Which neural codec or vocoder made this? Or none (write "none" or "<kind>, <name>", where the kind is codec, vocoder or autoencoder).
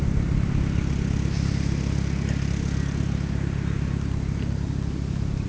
none